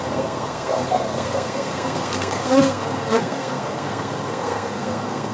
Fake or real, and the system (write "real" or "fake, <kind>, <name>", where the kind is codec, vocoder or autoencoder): fake, codec, SNAC